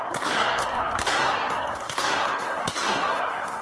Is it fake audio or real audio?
fake